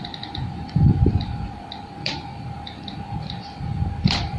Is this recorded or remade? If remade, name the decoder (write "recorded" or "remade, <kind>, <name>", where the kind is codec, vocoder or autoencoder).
remade, vocoder, BigVGAN v2